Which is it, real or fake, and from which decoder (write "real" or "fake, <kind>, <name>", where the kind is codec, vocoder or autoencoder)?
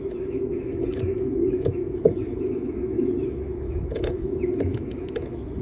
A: fake, autoencoder, DAC-VAE